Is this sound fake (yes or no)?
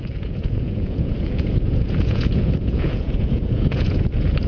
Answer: yes